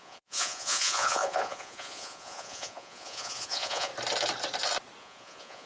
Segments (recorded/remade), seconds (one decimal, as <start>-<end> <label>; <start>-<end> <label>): 0.0-3.9 remade; 3.9-5.0 recorded; 5.0-5.7 remade